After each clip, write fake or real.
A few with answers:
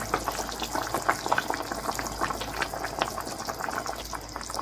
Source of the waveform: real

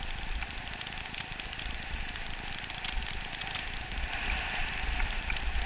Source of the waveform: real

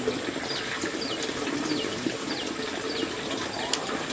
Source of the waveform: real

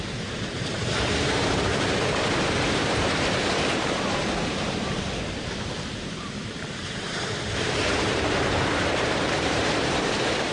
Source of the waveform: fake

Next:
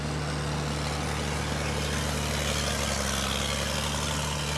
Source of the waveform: real